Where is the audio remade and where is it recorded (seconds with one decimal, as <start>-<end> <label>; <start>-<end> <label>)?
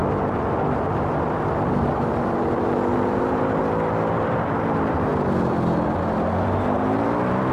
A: 0.0-1.7 recorded; 1.7-3.6 remade; 3.6-4.6 recorded; 4.6-5.1 remade; 5.1-6.4 recorded; 6.4-7.5 remade